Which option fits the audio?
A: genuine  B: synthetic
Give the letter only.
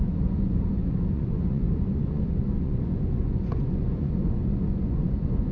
B